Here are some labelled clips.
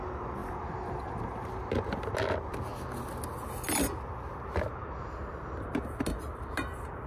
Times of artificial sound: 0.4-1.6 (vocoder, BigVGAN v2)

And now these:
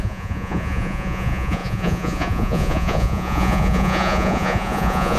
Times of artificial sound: 0.0-5.2 (vocoder, Vocos)

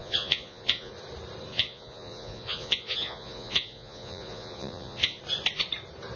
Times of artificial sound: 0.0-0.9 (vocoder, Vocos); 1.5-5.2

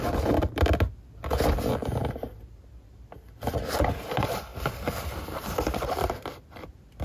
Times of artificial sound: 4.5-7.0 (vocoder, BigVGAN v2)

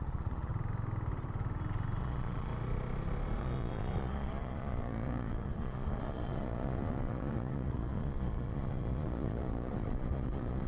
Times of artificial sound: 0.0-0.5 (vocoder, Vocos); 2.0-2.5; 3.4-10.7

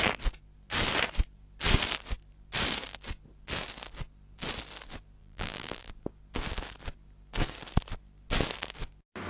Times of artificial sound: 5.2-5.9 (vocoder, BigVGAN v2)

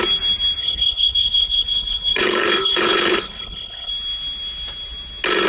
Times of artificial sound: 0.6-3.9 (codec, HILCodec)

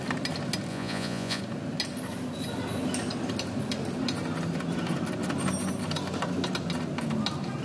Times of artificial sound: 0.7-1.4 (vocoder, Vocos)